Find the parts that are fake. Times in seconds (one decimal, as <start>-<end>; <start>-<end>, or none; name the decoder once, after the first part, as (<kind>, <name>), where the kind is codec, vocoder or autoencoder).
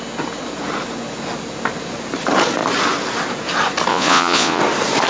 3.9-4.6 (vocoder, Vocos)